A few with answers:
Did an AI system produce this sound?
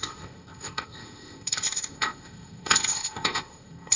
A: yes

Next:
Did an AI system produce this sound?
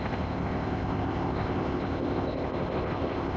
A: yes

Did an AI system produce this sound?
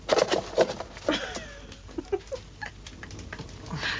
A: no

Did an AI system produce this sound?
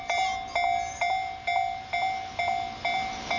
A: no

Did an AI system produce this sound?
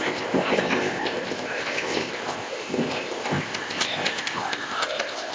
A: yes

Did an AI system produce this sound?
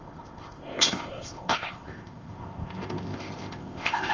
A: yes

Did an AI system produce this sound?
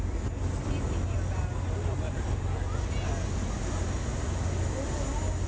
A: no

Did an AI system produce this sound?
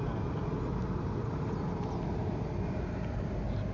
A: no